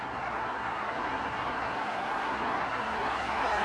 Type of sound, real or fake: fake